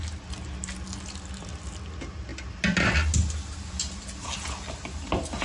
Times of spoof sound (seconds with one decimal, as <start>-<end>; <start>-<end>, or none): none